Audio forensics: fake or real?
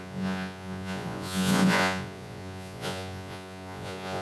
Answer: fake